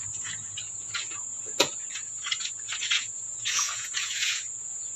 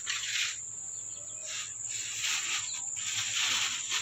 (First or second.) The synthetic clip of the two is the first